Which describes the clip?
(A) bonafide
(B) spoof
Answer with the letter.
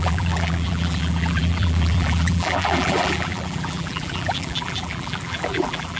B